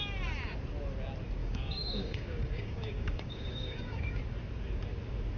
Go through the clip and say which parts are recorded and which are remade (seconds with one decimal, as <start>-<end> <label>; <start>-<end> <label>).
0.0-1.4 recorded; 1.4-4.2 remade; 4.2-5.4 recorded